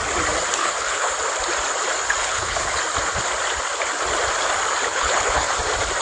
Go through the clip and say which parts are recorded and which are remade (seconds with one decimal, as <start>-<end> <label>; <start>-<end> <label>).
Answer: 0.0-0.6 recorded; 0.6-1.1 remade; 1.1-2.2 recorded; 2.2-2.8 remade; 2.8-4.9 recorded; 4.9-5.5 remade; 5.5-6.0 recorded